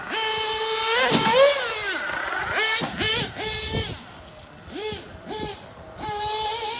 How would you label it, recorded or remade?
recorded